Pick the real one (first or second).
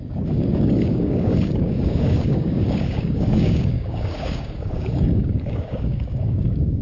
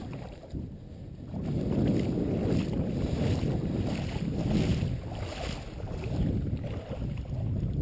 second